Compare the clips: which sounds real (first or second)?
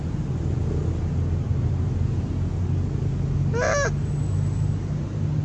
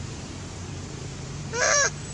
first